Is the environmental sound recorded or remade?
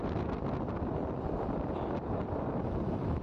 remade